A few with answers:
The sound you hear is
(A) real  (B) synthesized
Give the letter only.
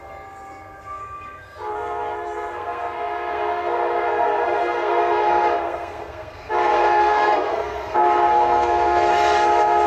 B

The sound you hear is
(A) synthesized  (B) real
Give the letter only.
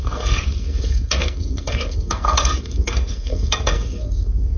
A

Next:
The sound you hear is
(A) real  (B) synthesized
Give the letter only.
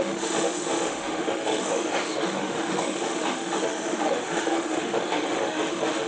B